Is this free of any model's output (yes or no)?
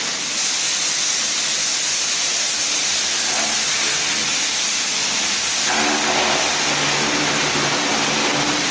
yes